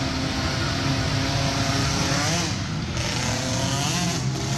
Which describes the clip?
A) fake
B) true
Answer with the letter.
B